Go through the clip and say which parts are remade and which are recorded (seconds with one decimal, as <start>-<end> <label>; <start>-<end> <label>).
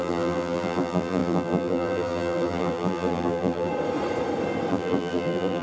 0.0-3.7 remade; 3.7-4.7 recorded; 4.7-5.6 remade